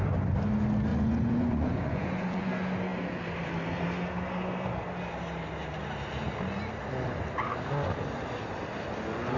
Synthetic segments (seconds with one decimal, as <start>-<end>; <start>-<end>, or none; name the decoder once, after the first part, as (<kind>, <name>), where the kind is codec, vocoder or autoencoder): 0.9-2.5 (vocoder, Vocos)